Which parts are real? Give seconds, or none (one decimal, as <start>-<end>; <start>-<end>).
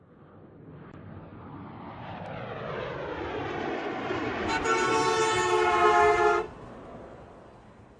0.0-8.0